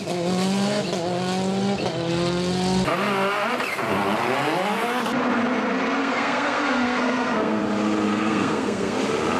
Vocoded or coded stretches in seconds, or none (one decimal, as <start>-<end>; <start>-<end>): 6.0-7.6; 8.1-9.0